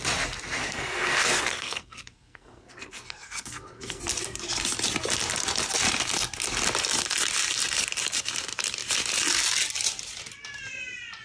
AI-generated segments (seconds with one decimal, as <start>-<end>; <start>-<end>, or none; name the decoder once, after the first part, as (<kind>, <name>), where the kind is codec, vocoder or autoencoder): 0.6-4.0 (codec, SNAC)